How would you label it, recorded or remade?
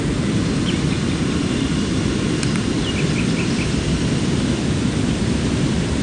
recorded